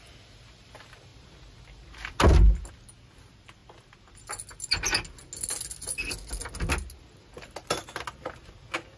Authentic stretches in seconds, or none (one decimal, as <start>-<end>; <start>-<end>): 0.0-9.0